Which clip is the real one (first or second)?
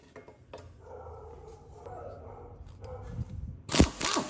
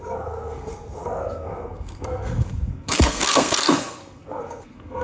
first